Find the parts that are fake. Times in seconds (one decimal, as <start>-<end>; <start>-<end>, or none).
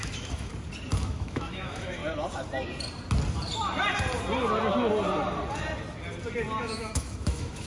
0.0-0.5; 1.0-2.0; 6.6-7.7